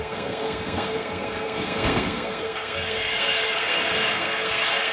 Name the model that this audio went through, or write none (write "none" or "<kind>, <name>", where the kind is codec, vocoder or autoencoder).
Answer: codec, SNAC